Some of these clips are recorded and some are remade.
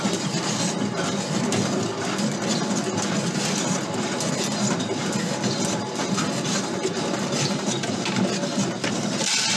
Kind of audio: recorded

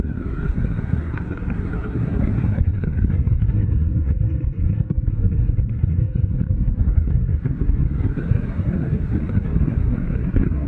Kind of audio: remade